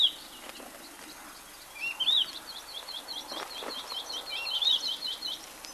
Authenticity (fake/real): real